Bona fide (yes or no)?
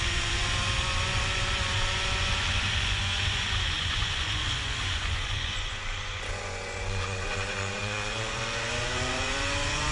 no